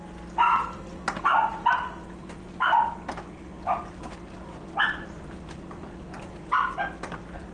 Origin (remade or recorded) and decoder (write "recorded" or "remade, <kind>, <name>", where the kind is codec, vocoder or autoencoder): recorded